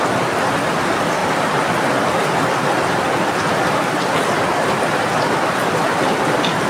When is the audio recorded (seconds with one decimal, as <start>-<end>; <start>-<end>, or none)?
0.0-6.7